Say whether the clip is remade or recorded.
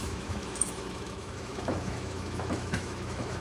remade